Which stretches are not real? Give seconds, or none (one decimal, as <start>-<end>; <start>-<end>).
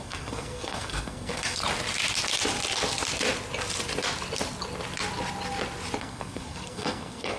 0.0-1.6; 6.0-7.4